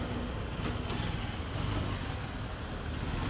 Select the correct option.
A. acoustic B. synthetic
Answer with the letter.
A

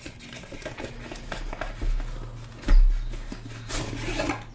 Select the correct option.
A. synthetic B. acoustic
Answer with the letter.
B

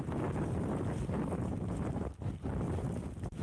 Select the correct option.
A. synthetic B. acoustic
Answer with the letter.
B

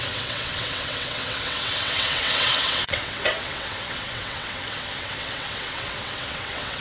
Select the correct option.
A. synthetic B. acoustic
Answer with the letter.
A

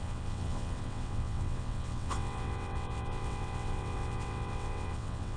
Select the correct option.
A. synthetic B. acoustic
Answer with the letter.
A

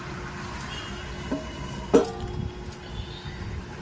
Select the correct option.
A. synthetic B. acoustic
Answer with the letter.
B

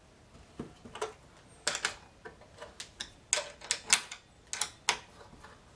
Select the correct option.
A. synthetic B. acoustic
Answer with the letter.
B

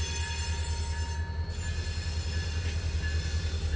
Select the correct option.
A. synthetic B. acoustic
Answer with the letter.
B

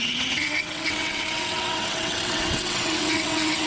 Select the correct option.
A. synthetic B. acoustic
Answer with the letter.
A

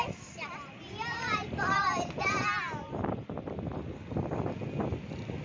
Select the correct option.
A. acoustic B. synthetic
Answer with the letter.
A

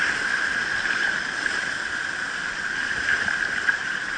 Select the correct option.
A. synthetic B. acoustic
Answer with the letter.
B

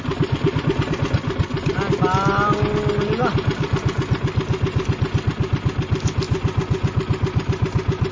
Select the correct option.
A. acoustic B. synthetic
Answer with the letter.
A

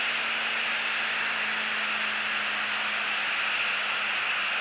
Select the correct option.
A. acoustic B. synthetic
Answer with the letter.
A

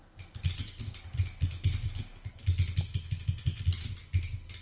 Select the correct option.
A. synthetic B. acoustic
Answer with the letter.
B